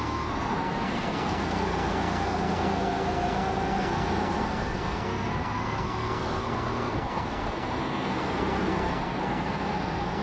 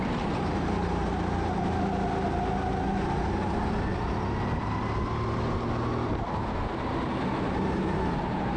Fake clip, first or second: first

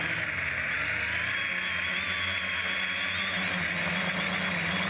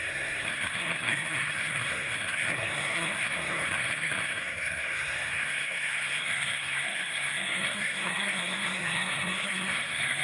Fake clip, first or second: second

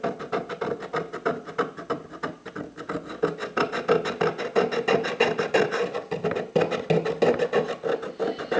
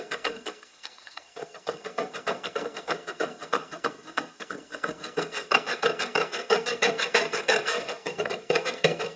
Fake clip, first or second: second